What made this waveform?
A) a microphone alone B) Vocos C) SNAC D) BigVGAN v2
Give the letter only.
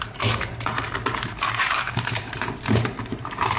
D